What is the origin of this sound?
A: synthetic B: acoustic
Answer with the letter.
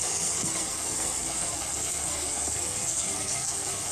A